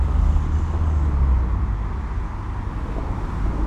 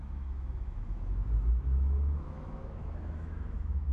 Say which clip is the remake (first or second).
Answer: second